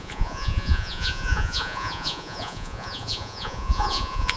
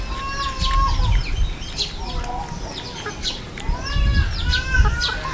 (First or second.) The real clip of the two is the second